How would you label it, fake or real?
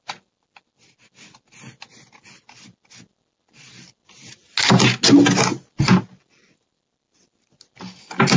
real